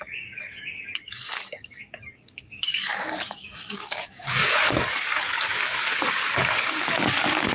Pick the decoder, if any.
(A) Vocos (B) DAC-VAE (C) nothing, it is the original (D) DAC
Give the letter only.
D